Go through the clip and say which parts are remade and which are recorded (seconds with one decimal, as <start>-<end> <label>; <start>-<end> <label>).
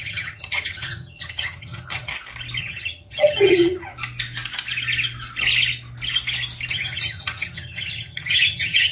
0.0-2.1 remade; 2.1-2.6 recorded; 2.6-3.9 remade; 3.9-6.7 recorded; 6.7-8.9 remade